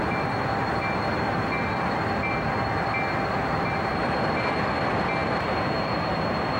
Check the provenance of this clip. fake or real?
real